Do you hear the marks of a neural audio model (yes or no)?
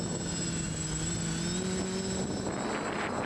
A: no